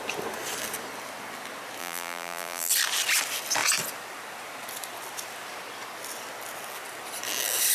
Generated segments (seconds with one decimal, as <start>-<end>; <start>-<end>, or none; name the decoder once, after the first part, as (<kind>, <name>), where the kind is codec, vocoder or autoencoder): 1.8-2.7 (vocoder, BigVGAN v2)